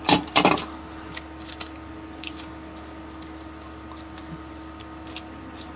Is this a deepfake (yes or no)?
no